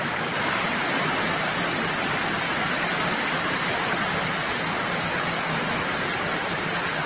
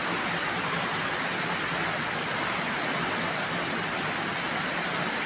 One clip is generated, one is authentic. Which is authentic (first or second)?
second